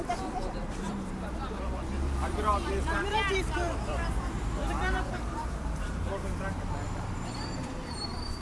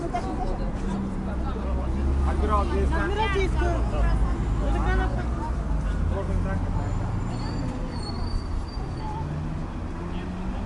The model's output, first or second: first